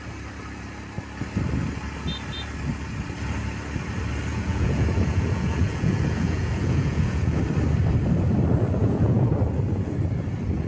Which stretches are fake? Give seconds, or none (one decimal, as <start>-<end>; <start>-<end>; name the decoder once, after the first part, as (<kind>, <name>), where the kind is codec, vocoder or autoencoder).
4.3-7.4 (vocoder, Vocos); 8.8-9.3